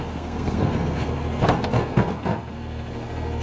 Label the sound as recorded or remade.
remade